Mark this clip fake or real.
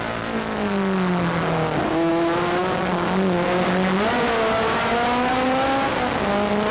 real